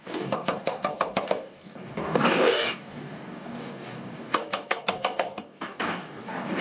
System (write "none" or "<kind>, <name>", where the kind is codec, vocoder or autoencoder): codec, DAC